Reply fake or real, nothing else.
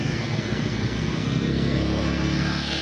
fake